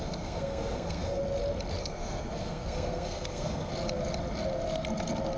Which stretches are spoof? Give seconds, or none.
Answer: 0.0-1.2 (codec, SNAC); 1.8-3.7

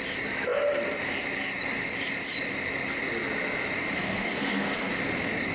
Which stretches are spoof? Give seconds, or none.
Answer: 4.0-4.9 (codec, SNAC)

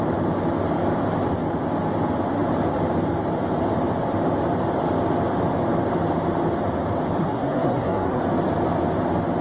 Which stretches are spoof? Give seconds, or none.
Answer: 7.2-8.2 (codec, SNAC)

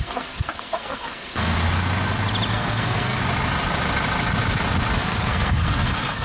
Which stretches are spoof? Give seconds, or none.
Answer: 0.0-1.5 (codec, SNAC); 2.5-3.2; 5.0-6.2

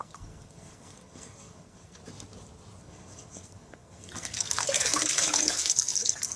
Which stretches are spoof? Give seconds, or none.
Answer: 0.0-2.0 (codec, SNAC); 2.8-6.4

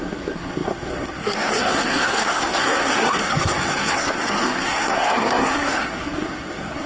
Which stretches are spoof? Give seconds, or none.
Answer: 0.0-6.9 (codec, SNAC)

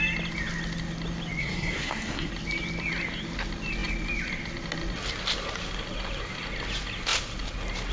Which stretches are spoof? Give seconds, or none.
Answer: 1.4-2.3 (codec, SNAC)